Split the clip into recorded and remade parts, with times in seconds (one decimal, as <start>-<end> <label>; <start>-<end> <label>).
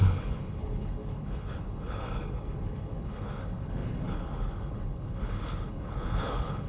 0.0-6.7 remade